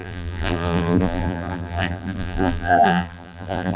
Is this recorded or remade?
remade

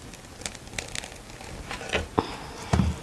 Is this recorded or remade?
recorded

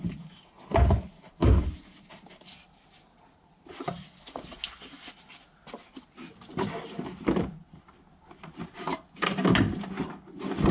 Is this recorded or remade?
recorded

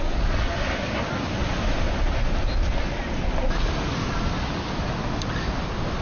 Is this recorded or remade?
recorded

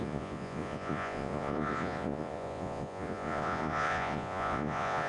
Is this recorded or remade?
remade